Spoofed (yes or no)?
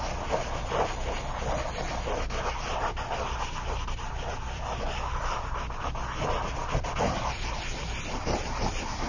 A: no